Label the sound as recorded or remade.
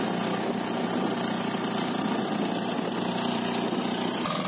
recorded